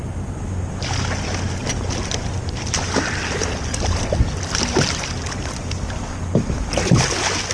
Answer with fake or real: real